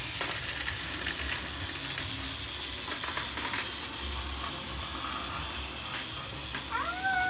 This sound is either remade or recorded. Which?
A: recorded